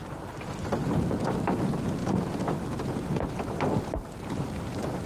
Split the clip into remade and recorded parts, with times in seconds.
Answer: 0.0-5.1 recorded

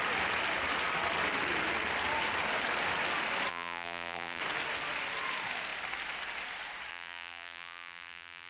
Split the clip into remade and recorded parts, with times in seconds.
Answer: 0.0-3.5 recorded; 3.5-4.4 remade; 4.4-6.9 recorded; 6.9-8.5 remade

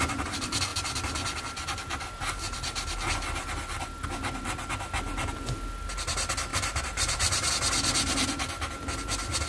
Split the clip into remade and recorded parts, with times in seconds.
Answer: 0.0-6.5 recorded; 6.5-7.5 remade; 7.5-9.5 recorded

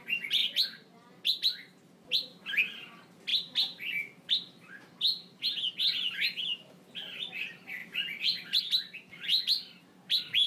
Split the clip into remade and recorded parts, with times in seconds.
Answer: 0.0-7.8 recorded; 7.8-8.6 remade; 8.6-10.5 recorded

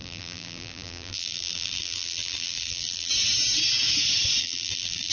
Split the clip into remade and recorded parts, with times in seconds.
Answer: 0.0-3.1 remade; 3.1-4.4 recorded; 4.4-5.1 remade

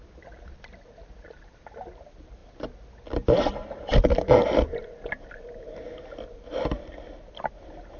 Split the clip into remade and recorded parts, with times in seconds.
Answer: 0.0-8.0 recorded

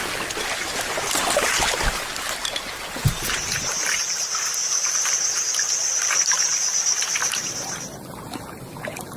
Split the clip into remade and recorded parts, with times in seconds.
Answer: 0.0-4.6 recorded; 4.6-7.4 remade; 7.4-9.2 recorded

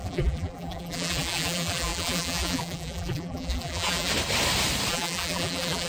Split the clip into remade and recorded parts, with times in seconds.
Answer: 0.0-4.1 remade; 4.1-4.9 recorded; 4.9-5.9 remade